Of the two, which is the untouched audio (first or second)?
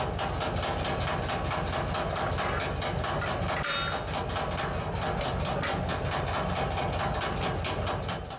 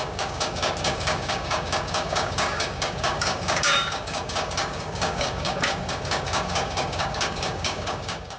first